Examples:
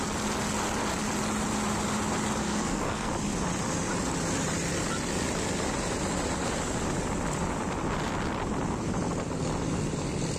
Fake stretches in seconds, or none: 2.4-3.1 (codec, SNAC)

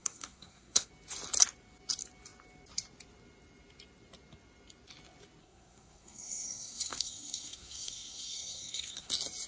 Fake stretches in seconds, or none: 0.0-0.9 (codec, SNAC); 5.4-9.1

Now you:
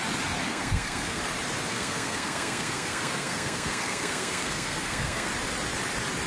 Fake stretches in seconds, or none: 0.5-1.2 (codec, SNAC); 1.7-5.3